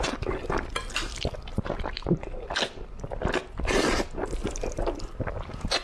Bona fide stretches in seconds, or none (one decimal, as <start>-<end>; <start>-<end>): 0.0-1.5; 2.2-4.4; 5.3-5.8